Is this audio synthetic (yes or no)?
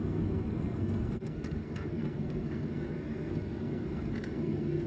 yes